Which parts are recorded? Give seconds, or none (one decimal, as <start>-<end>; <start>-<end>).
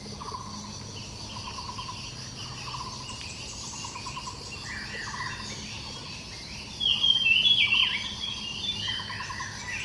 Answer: 0.0-9.8